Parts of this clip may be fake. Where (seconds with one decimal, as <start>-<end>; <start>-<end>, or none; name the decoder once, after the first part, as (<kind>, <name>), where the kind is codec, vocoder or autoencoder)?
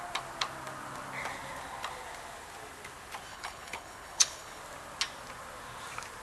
3.3-4.6 (codec, HILCodec)